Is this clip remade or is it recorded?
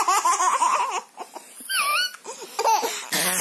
recorded